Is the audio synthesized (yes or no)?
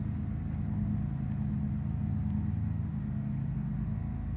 no